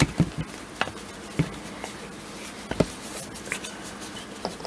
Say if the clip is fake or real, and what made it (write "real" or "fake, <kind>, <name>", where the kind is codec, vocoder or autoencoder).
real